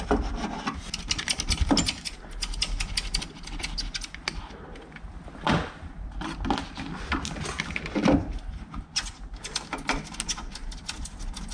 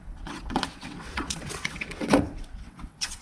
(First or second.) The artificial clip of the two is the second